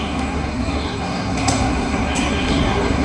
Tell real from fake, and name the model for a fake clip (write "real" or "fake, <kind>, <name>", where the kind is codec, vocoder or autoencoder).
fake, codec, SNAC